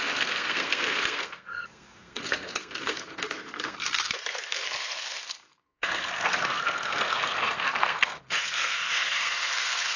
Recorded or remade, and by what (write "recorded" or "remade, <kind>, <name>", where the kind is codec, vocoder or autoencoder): remade, codec, SNAC